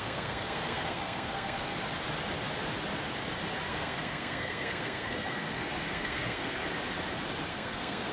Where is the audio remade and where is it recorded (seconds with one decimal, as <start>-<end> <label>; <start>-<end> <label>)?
0.0-1.7 remade; 1.7-3.7 recorded; 3.7-6.6 remade; 6.6-7.5 recorded; 7.5-8.1 remade